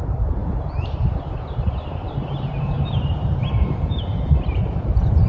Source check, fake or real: fake